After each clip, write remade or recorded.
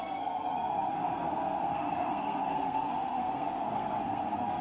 remade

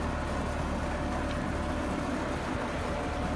recorded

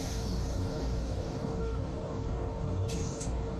remade